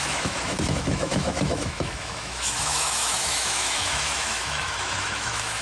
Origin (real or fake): fake